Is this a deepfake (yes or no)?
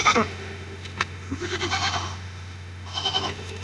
yes